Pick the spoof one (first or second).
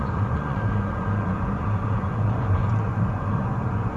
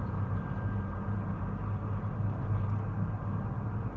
first